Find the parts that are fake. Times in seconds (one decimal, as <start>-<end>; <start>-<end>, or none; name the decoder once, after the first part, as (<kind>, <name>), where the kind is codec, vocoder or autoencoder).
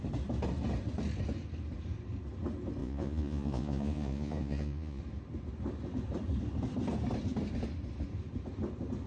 2.8-5.0 (vocoder, Vocos)